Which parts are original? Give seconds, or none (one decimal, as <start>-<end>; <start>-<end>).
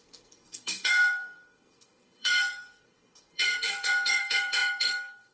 none